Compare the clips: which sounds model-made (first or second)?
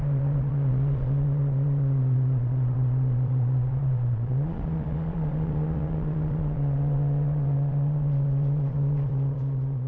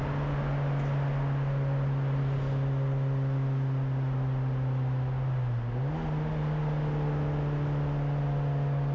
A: first